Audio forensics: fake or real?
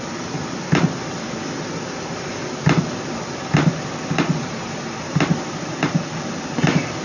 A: real